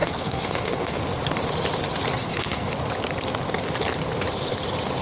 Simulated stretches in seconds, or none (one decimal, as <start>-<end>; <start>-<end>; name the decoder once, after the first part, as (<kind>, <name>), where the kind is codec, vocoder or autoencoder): 0.0-1.0 (codec, SNAC); 2.2-2.7